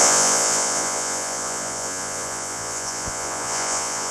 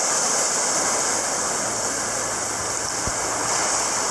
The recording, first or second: second